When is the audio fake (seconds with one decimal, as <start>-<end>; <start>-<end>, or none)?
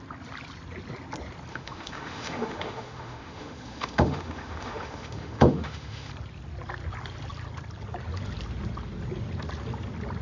1.5-6.1